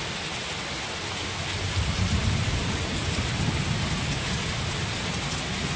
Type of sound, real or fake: real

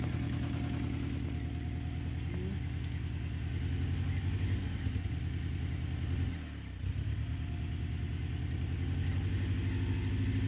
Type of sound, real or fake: real